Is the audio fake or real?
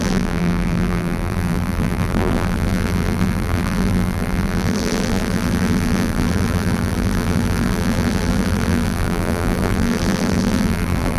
fake